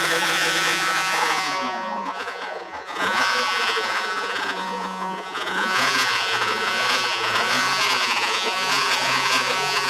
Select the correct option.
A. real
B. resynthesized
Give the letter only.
B